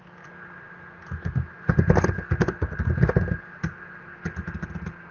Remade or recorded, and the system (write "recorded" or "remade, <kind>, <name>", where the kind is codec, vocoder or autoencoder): recorded